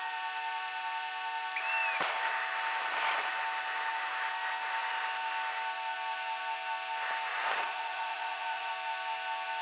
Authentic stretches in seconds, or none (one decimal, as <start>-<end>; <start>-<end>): 0.0-7.3; 8.7-9.6